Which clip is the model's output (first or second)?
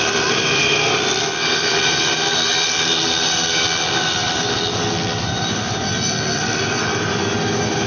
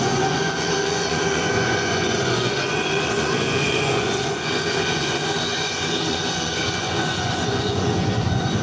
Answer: second